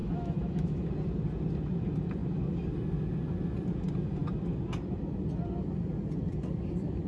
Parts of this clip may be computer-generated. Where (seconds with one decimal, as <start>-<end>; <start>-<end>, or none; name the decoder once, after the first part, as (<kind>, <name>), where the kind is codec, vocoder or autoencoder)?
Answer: 0.0-0.9 (autoencoder, DAC-VAE)